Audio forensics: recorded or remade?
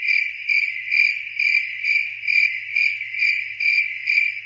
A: recorded